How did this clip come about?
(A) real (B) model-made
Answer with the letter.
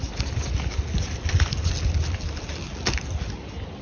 A